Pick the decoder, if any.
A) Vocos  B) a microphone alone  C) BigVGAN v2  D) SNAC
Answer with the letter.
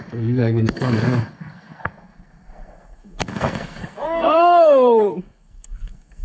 D